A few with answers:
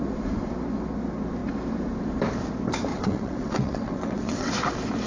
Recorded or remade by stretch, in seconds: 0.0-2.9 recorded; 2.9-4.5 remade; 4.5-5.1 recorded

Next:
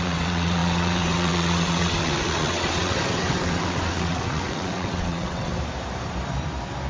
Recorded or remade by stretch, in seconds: 0.0-5.5 remade; 5.5-6.9 recorded

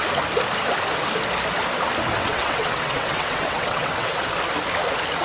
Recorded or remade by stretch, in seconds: 0.0-2.2 recorded; 2.2-4.2 remade; 4.2-5.2 recorded

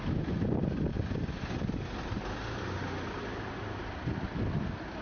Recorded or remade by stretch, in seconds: 0.0-5.0 recorded

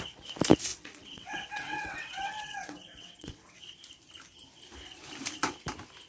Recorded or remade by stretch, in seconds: 0.0-0.7 recorded; 0.7-3.6 remade; 3.6-6.1 recorded

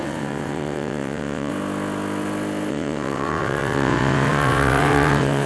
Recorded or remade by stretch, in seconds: 0.0-1.5 remade; 1.5-2.7 recorded; 2.7-5.5 remade